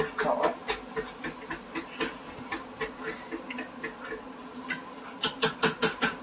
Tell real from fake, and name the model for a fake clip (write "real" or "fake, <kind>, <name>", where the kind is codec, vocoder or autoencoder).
real